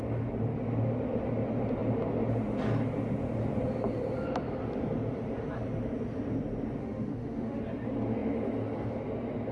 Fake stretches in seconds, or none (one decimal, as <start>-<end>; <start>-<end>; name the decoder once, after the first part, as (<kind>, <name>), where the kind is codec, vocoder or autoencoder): 6.8-7.6 (autoencoder, DAC-VAE)